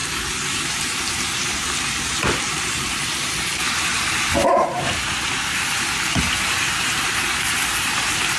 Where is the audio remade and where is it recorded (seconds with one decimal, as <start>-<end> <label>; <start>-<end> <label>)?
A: 0.0-8.4 remade